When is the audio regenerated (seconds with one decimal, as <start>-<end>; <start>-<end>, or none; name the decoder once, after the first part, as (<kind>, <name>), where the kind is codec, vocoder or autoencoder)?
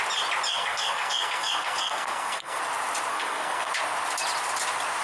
0.5-2.6 (codec, SNAC); 3.1-3.7